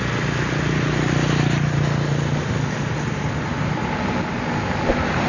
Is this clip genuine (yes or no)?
yes